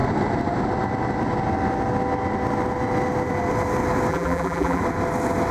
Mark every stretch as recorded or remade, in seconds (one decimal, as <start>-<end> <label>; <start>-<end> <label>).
0.0-4.1 recorded; 4.1-4.8 remade; 4.8-5.5 recorded